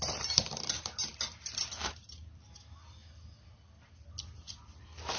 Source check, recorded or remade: recorded